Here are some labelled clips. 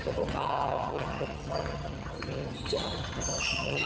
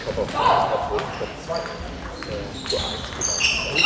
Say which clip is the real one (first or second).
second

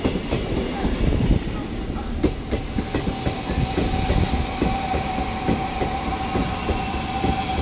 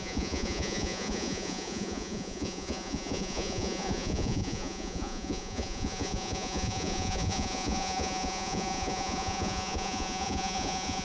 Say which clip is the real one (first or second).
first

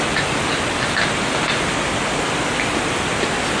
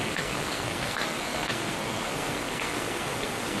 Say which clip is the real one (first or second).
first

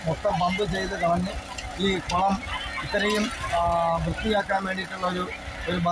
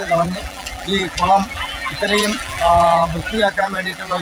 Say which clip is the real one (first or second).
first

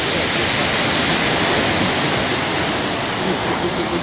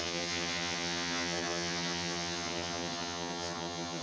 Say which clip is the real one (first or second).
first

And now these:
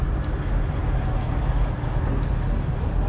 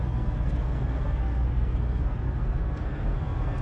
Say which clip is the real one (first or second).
first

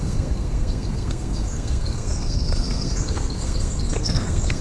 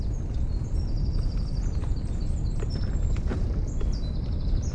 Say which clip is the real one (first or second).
second